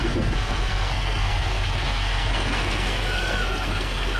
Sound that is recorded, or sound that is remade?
remade